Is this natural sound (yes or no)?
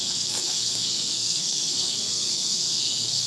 no